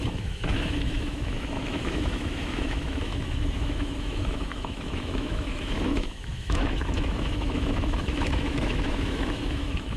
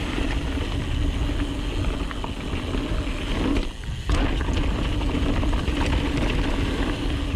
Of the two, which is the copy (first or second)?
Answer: first